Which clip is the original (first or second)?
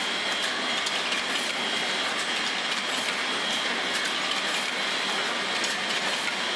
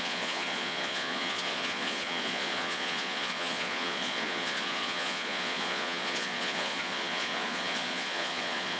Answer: first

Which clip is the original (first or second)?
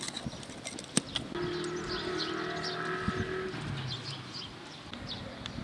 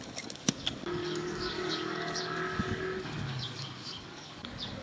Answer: first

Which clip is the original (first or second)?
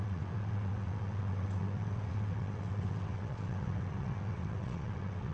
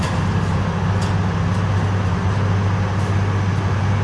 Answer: second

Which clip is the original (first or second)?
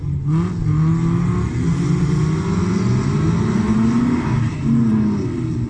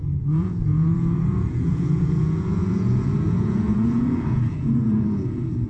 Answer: first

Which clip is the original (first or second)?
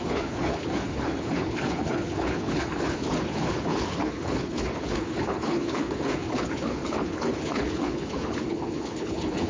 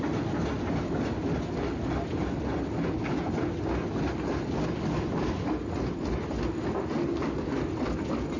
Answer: second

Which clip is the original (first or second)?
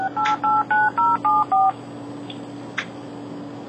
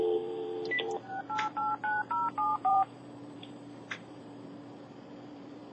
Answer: first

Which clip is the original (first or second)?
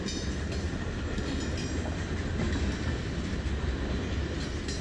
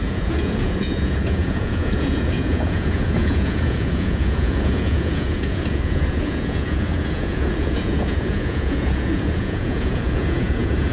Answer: first